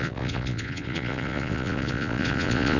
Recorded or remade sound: remade